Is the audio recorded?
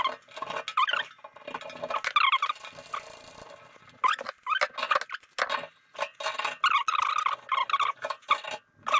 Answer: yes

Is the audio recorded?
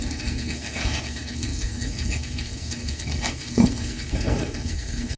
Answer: no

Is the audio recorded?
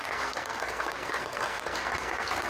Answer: no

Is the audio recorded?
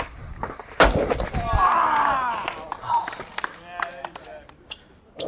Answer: yes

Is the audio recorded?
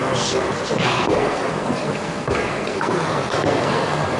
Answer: no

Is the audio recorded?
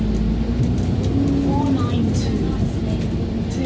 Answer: yes